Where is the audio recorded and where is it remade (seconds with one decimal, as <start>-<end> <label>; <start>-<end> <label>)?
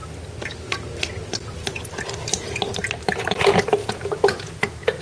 0.0-3.8 recorded; 3.8-4.5 remade; 4.5-5.0 recorded